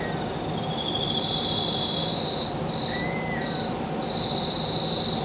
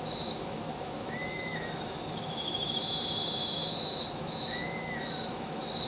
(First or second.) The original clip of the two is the first